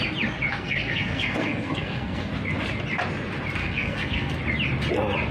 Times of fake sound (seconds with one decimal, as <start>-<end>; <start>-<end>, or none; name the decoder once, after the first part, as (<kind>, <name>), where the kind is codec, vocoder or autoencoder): 0.5-2.3 (codec, SNAC); 3.6-4.4